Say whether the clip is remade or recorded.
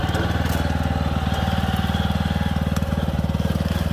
recorded